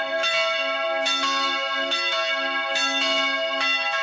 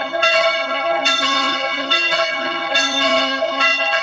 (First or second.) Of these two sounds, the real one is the first